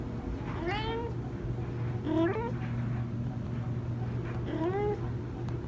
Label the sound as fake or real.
real